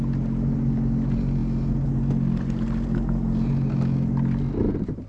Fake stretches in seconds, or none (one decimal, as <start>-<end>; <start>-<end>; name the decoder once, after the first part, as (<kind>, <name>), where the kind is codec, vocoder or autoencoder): none

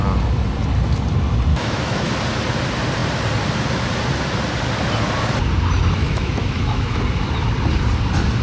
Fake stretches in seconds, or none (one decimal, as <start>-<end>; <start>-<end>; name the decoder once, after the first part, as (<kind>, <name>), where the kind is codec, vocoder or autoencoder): 1.5-2.1 (autoencoder, DAC-VAE); 6.0-7.0